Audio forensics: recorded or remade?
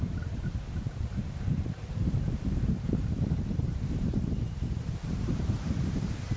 remade